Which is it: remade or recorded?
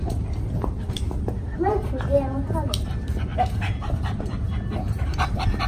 remade